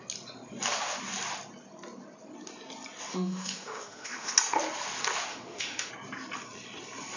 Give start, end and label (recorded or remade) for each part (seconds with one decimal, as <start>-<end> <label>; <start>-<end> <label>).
0.0-3.1 recorded; 3.1-4.3 remade; 4.3-5.3 recorded; 5.3-5.9 remade; 5.9-7.2 recorded